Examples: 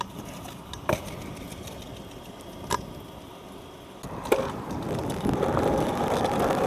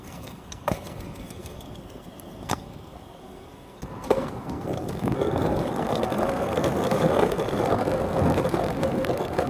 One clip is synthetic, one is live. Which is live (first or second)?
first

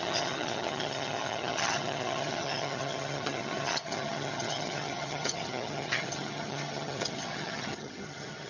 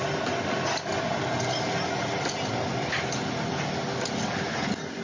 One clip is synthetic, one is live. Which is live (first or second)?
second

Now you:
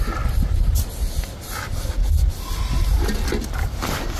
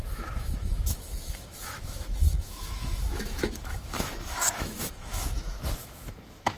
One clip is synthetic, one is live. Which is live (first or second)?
first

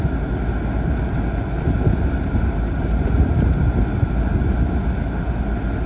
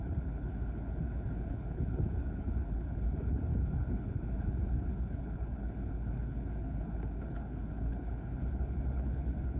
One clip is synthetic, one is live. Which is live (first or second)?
first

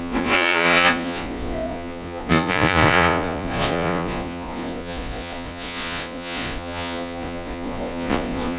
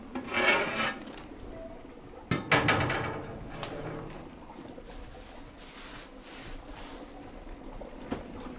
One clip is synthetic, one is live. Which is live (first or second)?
second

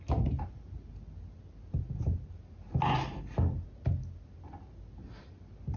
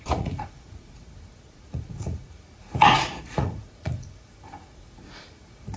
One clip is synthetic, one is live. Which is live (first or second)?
first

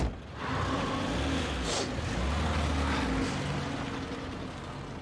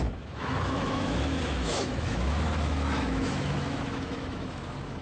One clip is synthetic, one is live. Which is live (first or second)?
first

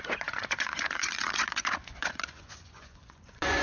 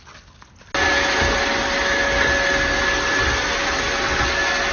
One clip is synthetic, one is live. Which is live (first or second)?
second